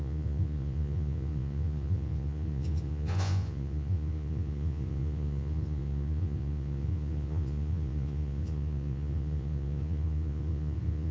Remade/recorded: remade